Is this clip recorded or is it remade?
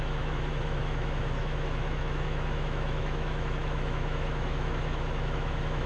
remade